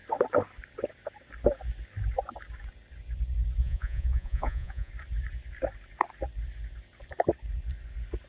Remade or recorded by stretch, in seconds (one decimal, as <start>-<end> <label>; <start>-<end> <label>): 0.0-3.6 recorded; 3.6-4.9 remade; 4.9-8.3 recorded